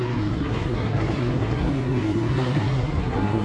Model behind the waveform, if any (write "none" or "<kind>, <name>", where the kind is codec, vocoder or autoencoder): codec, SNAC